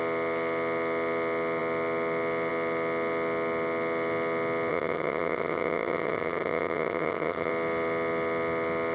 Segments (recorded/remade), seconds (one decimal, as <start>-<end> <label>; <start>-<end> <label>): 0.0-4.7 recorded; 4.7-7.5 remade; 7.5-8.9 recorded